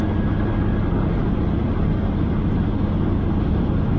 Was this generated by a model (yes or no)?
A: no